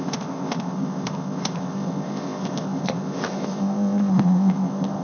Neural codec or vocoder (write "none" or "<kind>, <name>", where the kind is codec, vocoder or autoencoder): codec, ZipCodec